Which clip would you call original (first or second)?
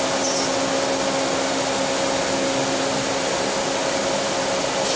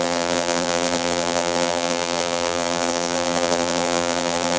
first